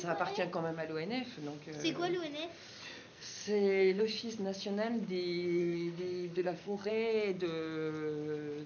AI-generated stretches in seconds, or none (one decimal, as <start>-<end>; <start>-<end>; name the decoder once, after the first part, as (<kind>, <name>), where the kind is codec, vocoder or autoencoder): 3.1-4.0 (codec, SNAC); 5.6-6.9